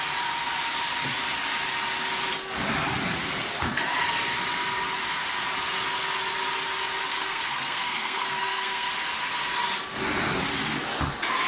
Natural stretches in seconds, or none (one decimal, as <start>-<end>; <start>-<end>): 0.0-7.1; 8.9-11.5